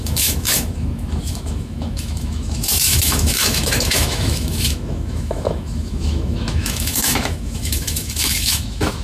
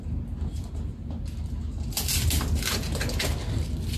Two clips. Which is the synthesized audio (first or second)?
first